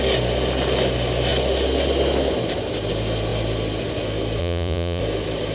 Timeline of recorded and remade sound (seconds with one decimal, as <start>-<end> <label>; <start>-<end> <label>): 0.0-4.4 recorded; 4.4-5.0 remade; 5.0-5.5 recorded